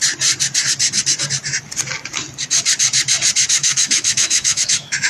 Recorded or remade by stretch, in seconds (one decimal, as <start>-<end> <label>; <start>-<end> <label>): 0.0-3.6 recorded; 3.6-5.1 remade